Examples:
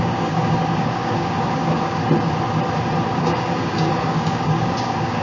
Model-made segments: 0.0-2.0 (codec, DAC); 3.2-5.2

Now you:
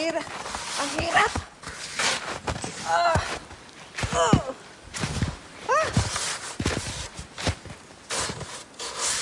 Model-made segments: 0.9-2.0 (codec, HILCodec)

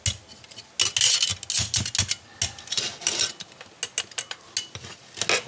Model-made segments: none

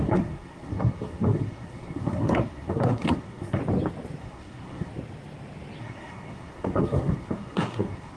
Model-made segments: 0.0-3.6 (codec, SNAC); 4.2-4.9; 5.8-8.2